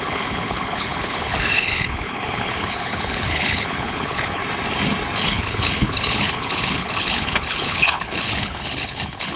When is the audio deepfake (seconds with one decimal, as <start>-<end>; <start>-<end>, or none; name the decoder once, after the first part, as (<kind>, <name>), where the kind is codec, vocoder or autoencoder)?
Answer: 0.0-4.4 (codec, HILCodec); 5.2-9.4